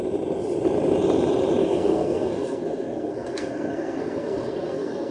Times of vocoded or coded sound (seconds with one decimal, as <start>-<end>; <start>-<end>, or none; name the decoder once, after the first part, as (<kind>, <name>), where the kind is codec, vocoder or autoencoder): 1.6-5.1 (codec, SNAC)